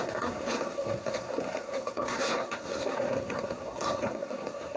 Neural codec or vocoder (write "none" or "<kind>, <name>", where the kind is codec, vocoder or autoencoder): codec, SNAC